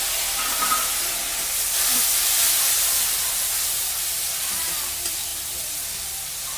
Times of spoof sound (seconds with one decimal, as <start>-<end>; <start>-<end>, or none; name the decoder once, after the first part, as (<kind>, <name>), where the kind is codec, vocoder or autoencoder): 1.3-4.2 (vocoder, BigVGAN v2); 5.3-6.6